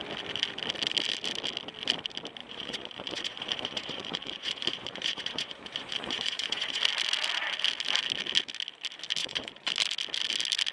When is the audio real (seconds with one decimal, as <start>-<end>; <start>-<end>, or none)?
0.0-2.4; 6.8-9.2; 9.7-10.7

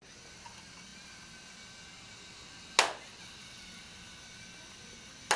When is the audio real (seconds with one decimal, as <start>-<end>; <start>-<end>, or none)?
0.0-5.4

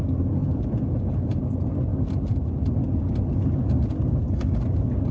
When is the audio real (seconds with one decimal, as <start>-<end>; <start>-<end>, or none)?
0.0-0.4; 1.5-5.1

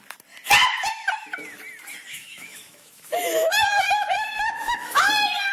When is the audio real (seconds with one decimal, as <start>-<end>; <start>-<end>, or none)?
0.0-2.1; 5.1-5.5